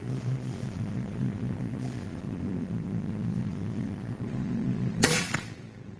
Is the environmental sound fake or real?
fake